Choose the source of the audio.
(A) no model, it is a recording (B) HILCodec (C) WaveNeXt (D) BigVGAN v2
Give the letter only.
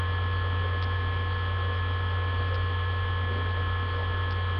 A